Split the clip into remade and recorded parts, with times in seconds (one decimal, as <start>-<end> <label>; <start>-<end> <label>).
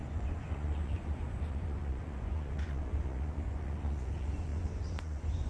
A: 0.0-5.5 remade